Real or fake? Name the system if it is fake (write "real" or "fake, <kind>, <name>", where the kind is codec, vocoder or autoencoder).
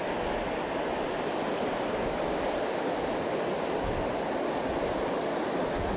real